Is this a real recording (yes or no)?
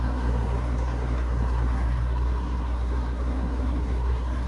no